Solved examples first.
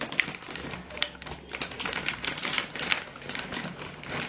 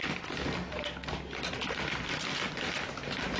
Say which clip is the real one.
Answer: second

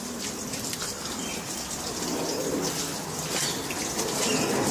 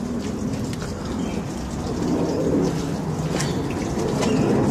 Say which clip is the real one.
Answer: second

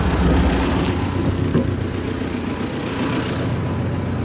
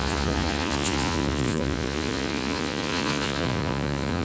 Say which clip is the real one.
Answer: first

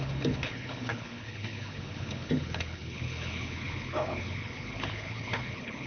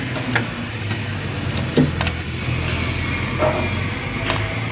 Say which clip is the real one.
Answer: second